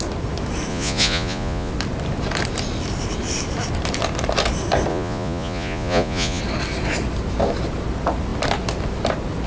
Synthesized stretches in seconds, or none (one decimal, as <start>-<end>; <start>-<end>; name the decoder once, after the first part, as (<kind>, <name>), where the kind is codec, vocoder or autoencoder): 0.7-1.7 (vocoder, Vocos); 4.9-6.4